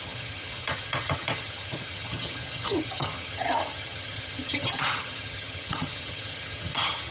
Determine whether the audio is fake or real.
fake